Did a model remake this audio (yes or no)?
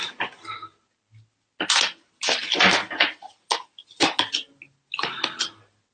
no